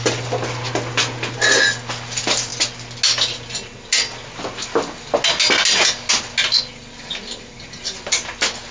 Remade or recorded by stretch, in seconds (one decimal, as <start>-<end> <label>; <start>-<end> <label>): 0.0-8.7 recorded